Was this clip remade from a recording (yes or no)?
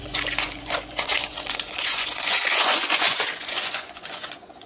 yes